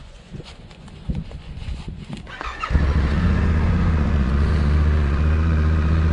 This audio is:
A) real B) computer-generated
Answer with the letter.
B